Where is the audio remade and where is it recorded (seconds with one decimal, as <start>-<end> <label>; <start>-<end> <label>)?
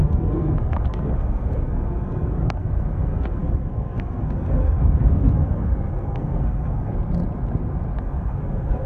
0.0-6.9 remade; 6.9-8.0 recorded; 8.0-8.9 remade